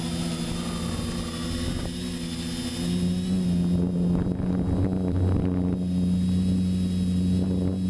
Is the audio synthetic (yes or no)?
no